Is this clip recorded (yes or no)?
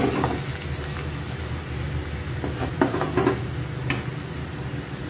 yes